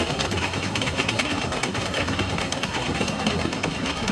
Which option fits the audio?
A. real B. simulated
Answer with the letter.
B